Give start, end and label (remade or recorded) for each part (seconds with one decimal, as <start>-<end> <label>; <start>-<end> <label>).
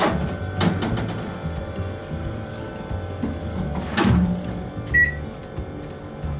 0.0-2.0 recorded; 2.0-2.7 remade; 2.7-3.4 recorded; 3.4-4.7 remade; 4.7-6.4 recorded